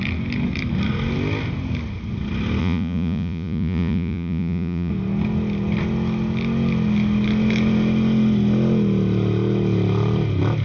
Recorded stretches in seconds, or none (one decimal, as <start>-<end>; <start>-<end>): 0.0-2.6; 4.9-10.6